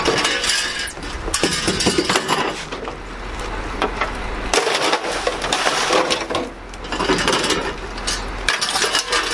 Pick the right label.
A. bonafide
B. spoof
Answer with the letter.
A